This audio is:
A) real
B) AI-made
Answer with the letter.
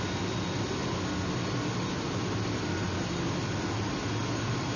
A